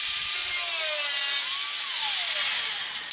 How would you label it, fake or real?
real